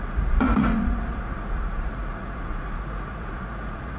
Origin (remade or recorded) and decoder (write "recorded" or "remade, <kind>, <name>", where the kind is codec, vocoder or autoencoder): remade, vocoder, Vocos